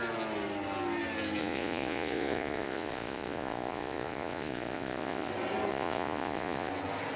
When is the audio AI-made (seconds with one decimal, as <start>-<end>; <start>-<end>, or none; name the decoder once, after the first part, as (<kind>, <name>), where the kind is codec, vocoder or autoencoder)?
1.4-5.3 (vocoder, Vocos); 5.7-6.7